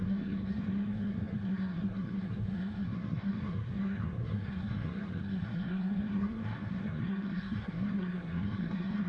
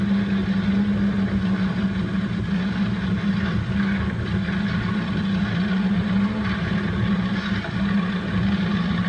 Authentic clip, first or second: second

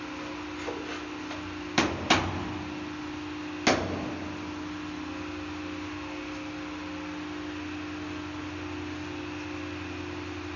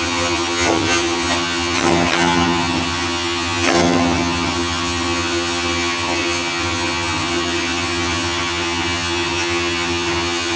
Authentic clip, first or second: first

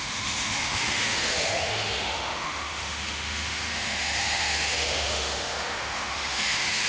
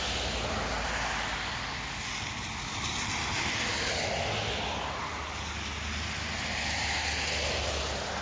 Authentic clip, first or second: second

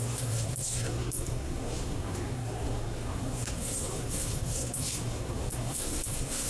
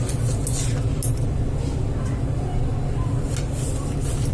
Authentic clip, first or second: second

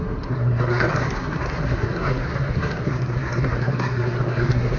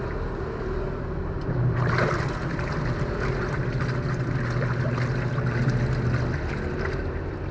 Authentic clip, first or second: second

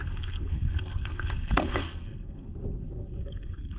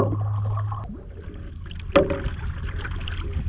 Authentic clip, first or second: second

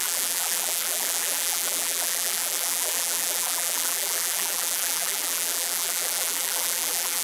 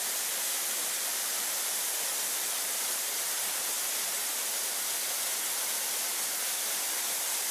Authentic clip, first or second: second